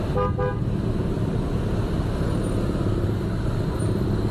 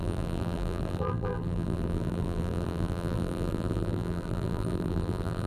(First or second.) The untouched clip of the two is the first